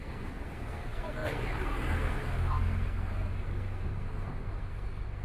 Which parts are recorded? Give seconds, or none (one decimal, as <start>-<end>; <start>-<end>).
none